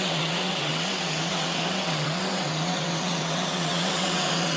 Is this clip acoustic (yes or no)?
no